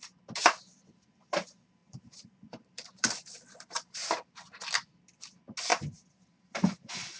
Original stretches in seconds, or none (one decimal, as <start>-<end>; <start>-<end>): 0.0-1.8; 4.6-7.2